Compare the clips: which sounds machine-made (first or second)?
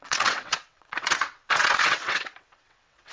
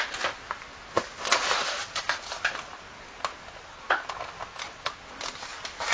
first